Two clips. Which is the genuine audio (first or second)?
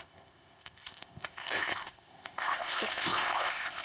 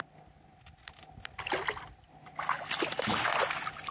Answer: second